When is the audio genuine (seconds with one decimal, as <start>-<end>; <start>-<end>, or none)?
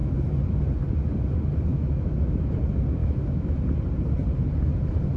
0.0-1.7; 2.6-3.0; 3.6-5.2